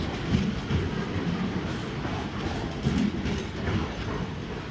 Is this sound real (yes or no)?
yes